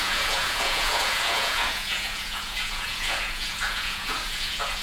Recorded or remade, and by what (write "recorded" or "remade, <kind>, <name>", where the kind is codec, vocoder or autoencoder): remade, vocoder, Vocos